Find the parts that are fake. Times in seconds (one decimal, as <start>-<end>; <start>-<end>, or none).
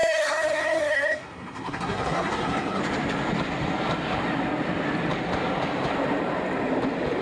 0.0-2.8